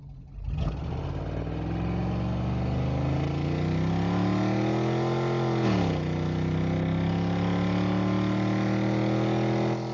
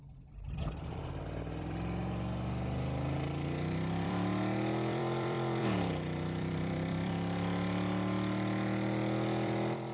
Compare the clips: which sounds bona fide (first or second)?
first